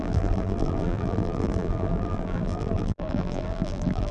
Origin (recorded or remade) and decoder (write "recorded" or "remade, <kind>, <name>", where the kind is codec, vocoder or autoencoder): remade, vocoder, BigVGAN v2